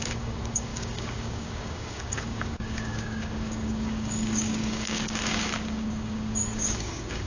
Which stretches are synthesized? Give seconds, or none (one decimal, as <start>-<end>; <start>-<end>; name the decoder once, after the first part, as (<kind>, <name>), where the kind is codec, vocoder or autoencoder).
0.0-7.3 (codec, DAC)